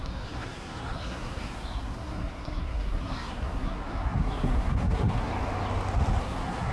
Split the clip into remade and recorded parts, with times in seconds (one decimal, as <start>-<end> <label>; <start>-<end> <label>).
0.0-5.3 remade; 5.3-6.2 recorded; 6.2-6.7 remade

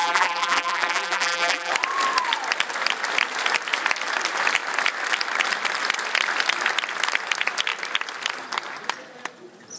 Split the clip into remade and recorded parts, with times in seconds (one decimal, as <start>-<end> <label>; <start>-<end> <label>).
0.0-1.7 remade; 1.7-9.8 recorded